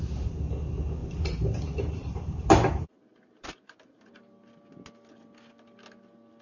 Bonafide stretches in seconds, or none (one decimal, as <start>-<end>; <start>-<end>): 0.0-1.0; 4.3-6.4